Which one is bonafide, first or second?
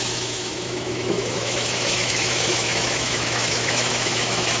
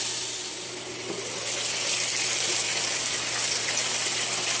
second